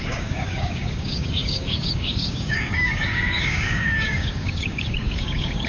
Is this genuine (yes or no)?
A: no